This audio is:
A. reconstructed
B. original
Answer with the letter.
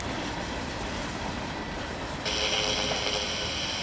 B